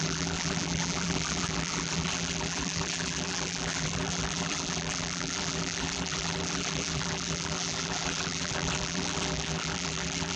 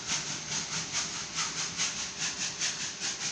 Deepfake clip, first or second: first